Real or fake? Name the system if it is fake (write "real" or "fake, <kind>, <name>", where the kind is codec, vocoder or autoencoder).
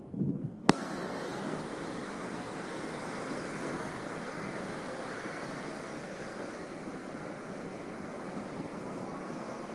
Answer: fake, codec, SNAC